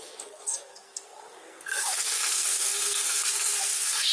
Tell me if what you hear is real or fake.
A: fake